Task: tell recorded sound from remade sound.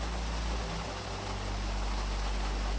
recorded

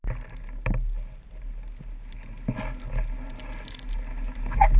recorded